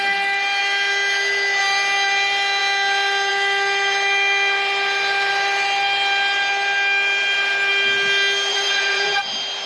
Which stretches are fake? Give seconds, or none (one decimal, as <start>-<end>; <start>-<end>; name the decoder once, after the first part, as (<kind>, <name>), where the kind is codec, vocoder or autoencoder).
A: 8.5-9.2 (vocoder, Vocos)